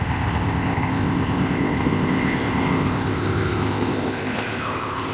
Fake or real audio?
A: fake